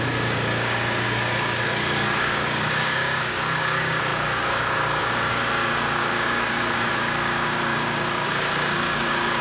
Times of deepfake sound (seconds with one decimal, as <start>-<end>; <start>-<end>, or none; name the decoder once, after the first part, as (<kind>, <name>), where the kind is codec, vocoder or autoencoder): 0.0-9.4 (codec, DAC)